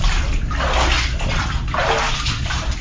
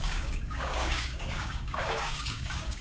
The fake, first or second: second